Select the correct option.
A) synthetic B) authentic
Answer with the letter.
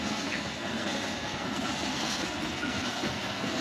A